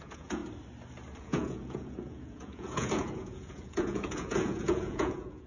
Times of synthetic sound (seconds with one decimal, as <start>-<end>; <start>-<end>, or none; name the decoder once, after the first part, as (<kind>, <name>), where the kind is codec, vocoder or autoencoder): 0.0-0.4 (vocoder, Vocos); 1.2-5.5